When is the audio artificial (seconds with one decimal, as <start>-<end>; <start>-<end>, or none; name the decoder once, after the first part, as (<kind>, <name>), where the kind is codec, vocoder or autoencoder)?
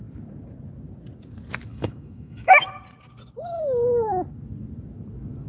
1.7-2.7 (autoencoder, DAC-VAE)